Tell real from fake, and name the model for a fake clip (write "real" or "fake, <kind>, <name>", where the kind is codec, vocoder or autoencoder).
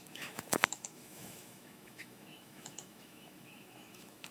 fake, autoencoder, DAC-VAE